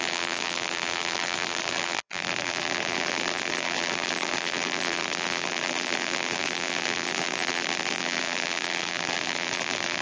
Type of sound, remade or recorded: remade